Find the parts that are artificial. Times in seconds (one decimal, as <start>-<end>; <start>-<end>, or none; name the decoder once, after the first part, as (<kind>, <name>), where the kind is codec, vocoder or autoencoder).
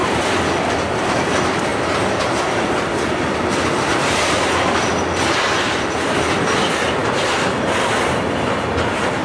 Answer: none